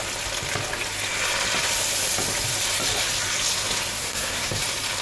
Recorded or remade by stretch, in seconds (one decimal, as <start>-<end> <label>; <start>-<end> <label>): 0.0-4.0 recorded; 4.0-4.6 remade; 4.6-5.0 recorded